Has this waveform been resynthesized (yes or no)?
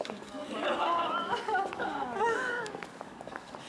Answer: yes